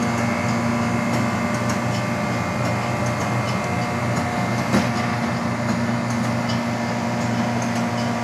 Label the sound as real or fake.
real